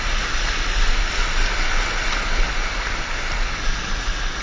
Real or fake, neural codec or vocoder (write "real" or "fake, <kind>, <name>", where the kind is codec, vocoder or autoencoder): real